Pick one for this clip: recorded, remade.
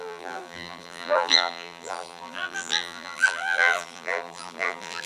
remade